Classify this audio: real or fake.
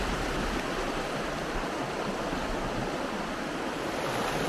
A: real